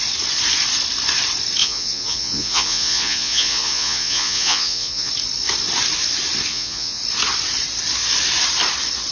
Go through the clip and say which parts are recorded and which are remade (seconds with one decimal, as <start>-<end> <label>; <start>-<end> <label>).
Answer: 0.0-1.6 recorded; 1.6-5.1 remade; 5.1-6.5 recorded; 6.5-7.0 remade; 7.0-9.1 recorded